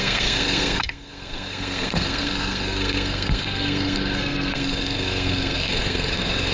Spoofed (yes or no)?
yes